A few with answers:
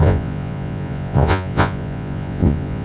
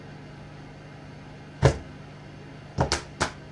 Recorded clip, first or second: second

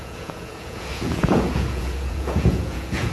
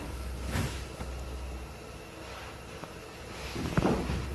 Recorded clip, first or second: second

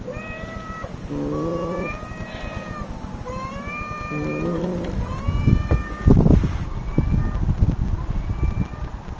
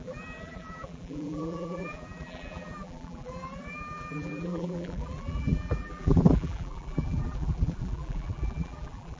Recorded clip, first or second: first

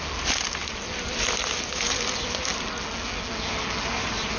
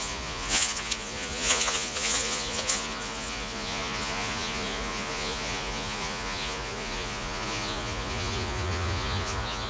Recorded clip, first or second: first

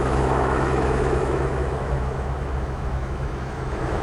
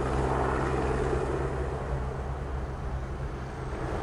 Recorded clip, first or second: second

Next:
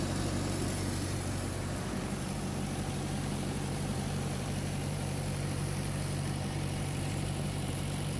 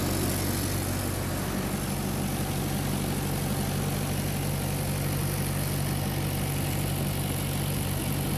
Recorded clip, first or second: second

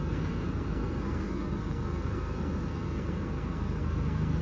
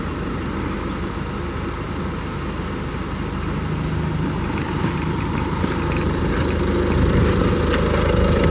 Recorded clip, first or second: second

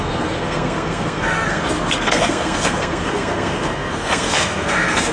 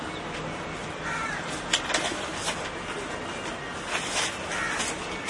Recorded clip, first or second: second